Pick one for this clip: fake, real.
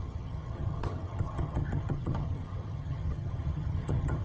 fake